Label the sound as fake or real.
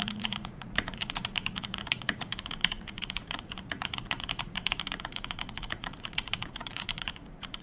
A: fake